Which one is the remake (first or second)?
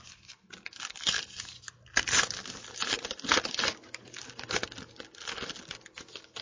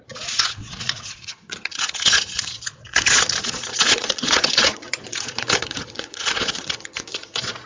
second